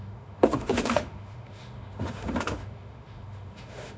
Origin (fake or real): fake